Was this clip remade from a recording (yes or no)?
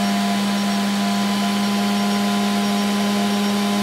no